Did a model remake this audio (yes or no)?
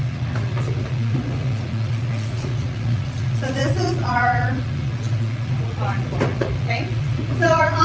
yes